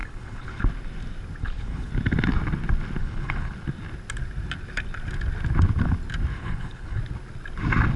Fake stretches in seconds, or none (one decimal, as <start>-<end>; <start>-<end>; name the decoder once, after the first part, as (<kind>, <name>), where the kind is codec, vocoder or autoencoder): 0.0-0.6 (codec, HILCodec); 1.4-1.9; 3.0-3.5; 6.3-7.0